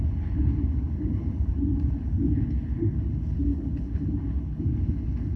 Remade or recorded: remade